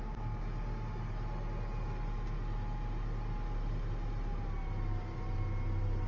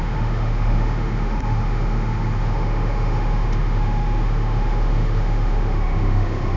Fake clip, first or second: second